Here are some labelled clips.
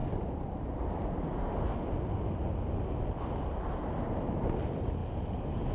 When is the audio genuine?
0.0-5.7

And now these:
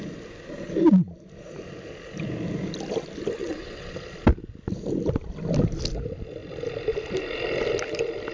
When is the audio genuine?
0.0-3.4; 3.9-8.3

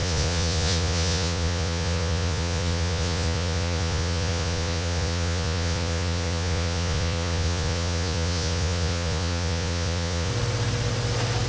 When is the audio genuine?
10.3-11.5

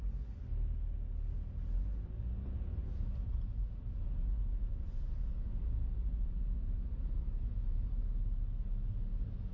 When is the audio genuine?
0.0-2.7; 7.9-9.5

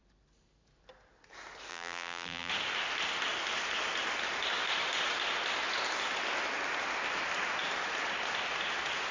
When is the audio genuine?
0.0-1.7; 2.5-9.1